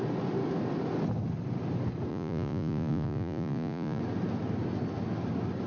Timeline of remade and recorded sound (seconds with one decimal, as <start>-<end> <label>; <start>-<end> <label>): 0.0-2.1 recorded; 2.1-4.0 remade; 4.0-5.7 recorded